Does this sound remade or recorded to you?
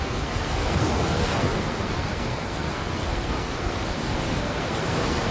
remade